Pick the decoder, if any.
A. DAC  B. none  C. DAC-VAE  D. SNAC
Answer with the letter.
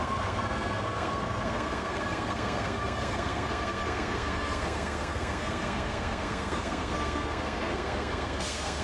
D